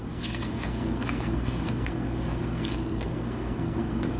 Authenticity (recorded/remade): remade